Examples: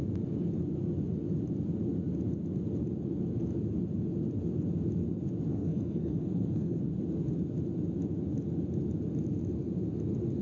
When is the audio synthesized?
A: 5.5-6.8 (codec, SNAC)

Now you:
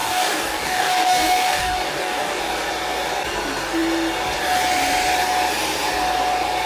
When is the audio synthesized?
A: 0.0-2.4 (codec, DAC)

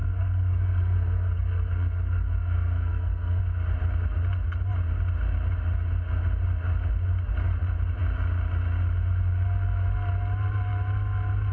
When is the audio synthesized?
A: 0.0-3.4 (codec, SNAC)

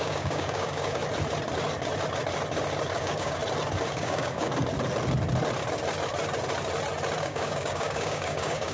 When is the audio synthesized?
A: 0.0-1.0 (codec, DAC); 3.0-3.4; 3.9-4.5; 7.2-8.7

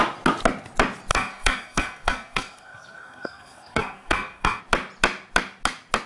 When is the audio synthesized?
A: 1.1-4.6 (codec, SNAC)